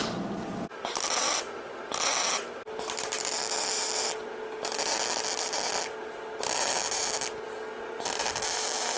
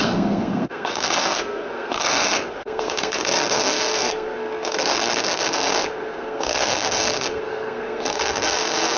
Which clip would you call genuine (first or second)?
first